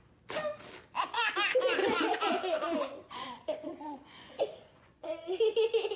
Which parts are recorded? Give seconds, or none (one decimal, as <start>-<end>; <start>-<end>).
0.0-1.8; 5.4-6.0